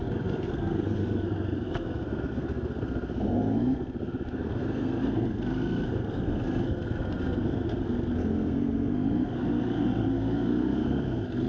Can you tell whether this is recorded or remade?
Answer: remade